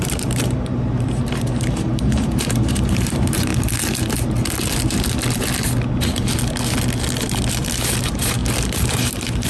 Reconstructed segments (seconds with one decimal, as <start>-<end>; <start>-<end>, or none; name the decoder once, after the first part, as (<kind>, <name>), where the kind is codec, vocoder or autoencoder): 0.0-3.5 (vocoder, BigVGAN v2); 8.0-8.4; 8.9-9.5